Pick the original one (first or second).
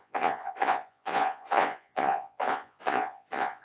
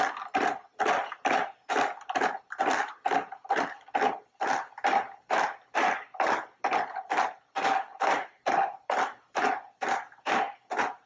second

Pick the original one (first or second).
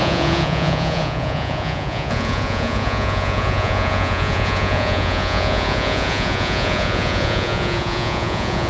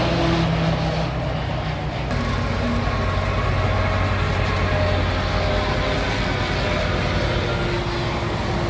second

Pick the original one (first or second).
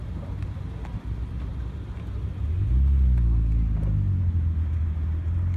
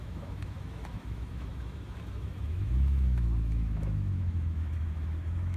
first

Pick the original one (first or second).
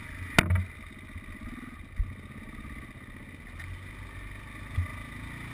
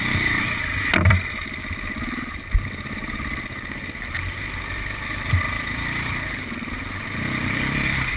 first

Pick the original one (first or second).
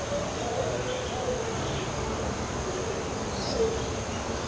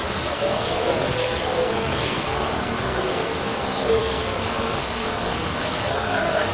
first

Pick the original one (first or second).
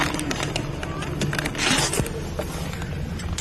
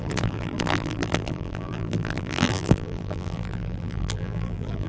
first